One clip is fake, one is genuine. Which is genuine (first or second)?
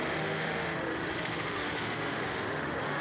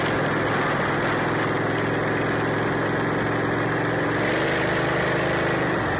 second